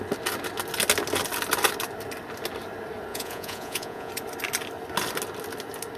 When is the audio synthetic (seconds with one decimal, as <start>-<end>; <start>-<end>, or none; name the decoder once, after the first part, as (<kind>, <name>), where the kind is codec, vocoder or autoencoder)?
3.1-4.1 (vocoder, Vocos)